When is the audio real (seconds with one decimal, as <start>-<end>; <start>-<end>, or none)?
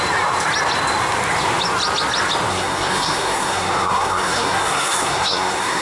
0.0-2.5